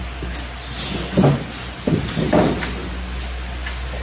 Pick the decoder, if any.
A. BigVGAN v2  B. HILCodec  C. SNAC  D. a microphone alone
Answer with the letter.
D